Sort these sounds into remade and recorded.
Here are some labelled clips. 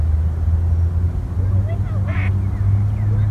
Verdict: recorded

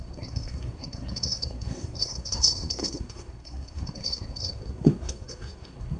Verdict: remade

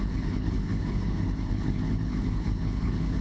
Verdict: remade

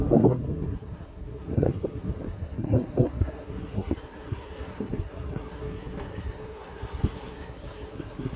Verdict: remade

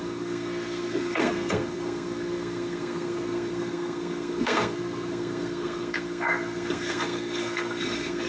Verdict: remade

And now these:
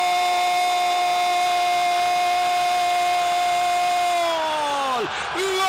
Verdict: recorded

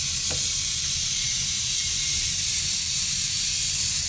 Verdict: remade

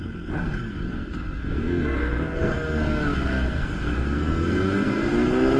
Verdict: remade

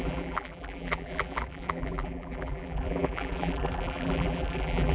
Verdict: remade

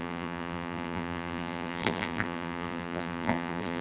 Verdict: remade